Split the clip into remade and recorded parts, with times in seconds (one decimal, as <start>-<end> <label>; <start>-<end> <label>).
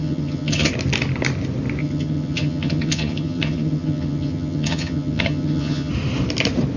0.0-0.7 remade; 0.7-1.8 recorded; 1.8-5.9 remade; 5.9-6.8 recorded